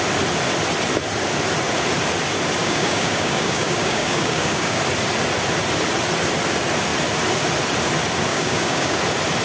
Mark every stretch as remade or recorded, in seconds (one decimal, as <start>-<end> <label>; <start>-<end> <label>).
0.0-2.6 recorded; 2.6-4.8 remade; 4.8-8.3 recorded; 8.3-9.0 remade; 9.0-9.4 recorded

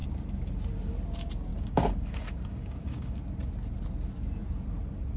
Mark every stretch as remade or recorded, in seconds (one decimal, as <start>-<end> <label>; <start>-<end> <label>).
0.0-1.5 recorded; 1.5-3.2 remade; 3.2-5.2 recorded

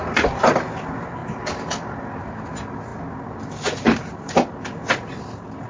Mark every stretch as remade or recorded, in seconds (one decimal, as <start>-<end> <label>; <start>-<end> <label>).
0.0-5.7 recorded

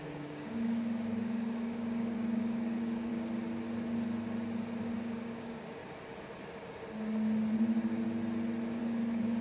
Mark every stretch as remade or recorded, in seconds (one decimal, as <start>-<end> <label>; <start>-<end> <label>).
0.0-3.1 remade; 3.1-4.8 recorded; 4.8-5.8 remade; 5.8-8.8 recorded; 8.8-9.4 remade

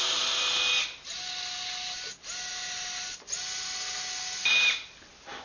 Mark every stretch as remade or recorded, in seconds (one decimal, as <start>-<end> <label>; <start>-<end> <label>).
0.0-5.4 recorded

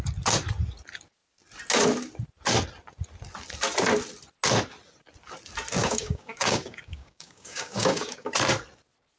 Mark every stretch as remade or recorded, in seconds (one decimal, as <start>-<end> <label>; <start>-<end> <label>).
0.0-5.8 recorded; 5.8-8.3 remade; 8.3-9.2 recorded

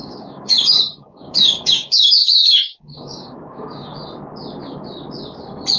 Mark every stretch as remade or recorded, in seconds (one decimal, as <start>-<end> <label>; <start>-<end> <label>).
0.0-3.9 remade; 3.9-5.8 recorded